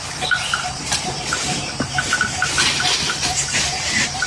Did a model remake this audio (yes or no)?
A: yes